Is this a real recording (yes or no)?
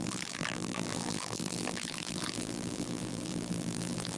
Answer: no